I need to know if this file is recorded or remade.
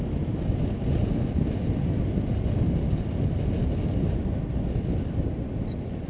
recorded